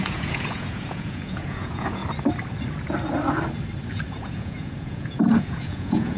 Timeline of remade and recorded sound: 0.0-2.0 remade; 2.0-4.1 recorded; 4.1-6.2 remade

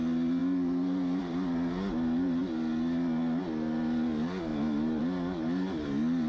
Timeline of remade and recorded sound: 0.0-6.3 recorded

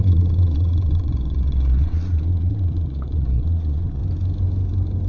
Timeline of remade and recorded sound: 0.0-4.0 remade; 4.0-5.1 recorded